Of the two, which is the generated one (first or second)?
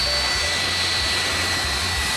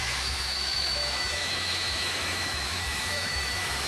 second